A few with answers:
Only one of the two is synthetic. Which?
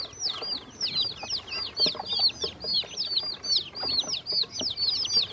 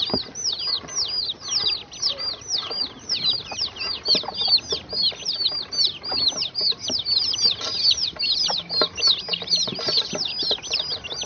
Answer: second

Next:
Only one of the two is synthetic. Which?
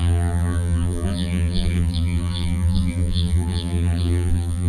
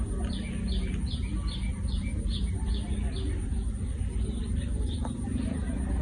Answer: first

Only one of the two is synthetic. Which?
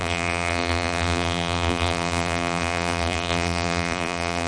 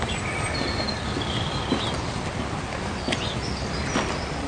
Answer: first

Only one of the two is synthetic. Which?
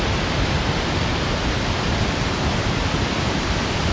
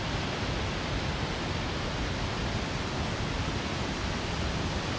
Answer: first